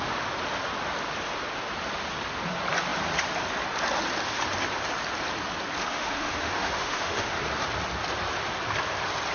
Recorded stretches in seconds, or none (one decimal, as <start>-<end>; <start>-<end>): 0.0-5.8; 7.4-9.3

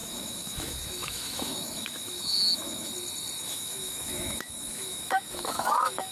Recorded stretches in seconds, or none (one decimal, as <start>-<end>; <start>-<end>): 2.9-3.4

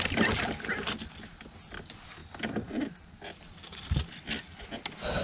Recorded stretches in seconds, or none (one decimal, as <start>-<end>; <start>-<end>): 0.0-5.2

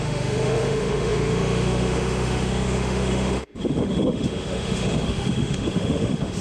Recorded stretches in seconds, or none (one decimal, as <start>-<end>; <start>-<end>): none

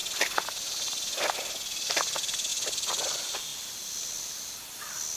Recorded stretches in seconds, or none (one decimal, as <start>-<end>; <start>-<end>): 0.0-5.2

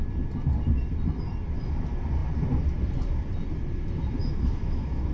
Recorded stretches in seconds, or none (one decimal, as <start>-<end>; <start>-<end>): 0.0-4.2